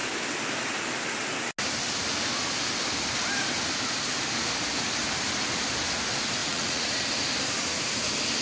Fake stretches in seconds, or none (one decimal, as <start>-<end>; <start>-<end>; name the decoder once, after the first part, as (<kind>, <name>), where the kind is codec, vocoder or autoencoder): 6.4-7.0 (vocoder, Vocos)